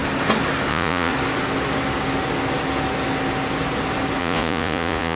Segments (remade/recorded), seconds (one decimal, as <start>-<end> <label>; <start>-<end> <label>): 0.0-0.7 recorded; 0.7-1.1 remade; 1.1-4.2 recorded; 4.2-5.2 remade